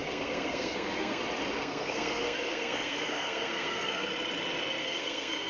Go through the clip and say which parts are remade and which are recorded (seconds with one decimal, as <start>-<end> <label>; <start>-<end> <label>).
0.0-1.2 remade; 1.2-1.6 recorded; 1.6-4.1 remade; 4.1-4.8 recorded; 4.8-5.5 remade